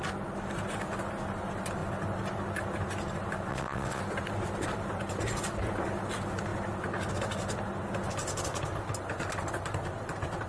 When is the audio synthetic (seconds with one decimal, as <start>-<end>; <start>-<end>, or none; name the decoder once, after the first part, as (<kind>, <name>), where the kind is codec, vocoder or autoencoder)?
3.5-4.0 (vocoder, WaveNeXt)